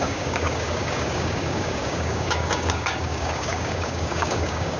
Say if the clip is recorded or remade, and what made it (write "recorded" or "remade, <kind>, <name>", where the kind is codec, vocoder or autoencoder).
remade, codec, DAC